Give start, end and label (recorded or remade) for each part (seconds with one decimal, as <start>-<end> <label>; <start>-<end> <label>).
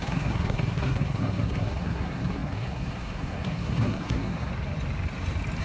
0.0-4.5 remade; 4.5-5.6 recorded